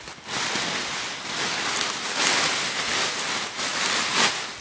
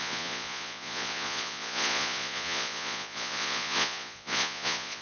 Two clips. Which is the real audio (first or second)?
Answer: first